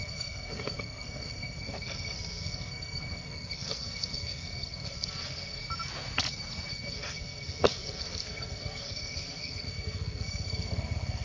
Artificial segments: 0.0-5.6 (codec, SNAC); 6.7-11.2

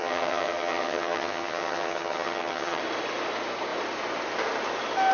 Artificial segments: 0.0-2.8 (vocoder, HiFi-GAN)

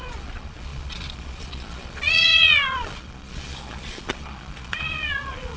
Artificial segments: 0.0-5.6 (vocoder, Vocos)

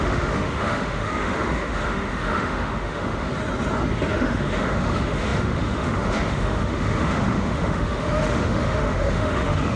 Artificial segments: 0.0-3.3 (autoencoder, DAC-VAE); 4.1-9.8

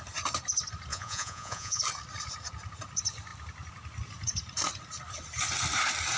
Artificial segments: 0.9-1.8 (vocoder, Vocos)

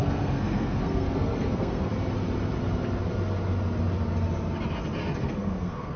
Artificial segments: 0.0-1.9 (codec, SNAC); 5.2-6.0

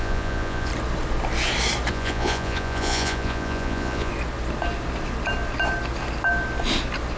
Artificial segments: 0.0-0.7 (vocoder, Vocos); 1.9-4.1

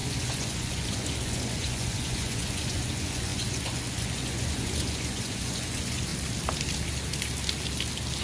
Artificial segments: 0.0-6.1 (vocoder, Vocos)